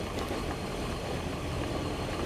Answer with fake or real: real